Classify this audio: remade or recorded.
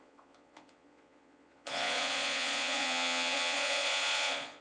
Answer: remade